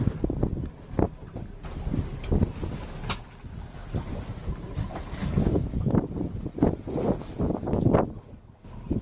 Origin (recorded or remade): recorded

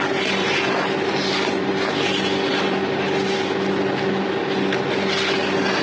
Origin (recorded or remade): recorded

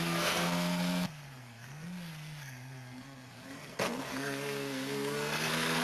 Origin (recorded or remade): remade